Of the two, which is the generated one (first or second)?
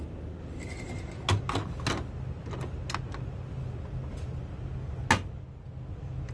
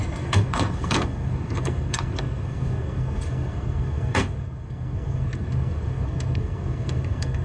second